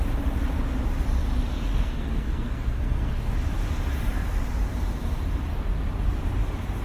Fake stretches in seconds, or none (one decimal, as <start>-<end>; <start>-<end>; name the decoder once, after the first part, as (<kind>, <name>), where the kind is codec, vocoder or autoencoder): 1.7-3.1 (codec, SNAC)